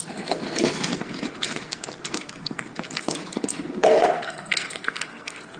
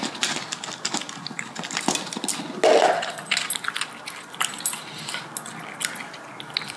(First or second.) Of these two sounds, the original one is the second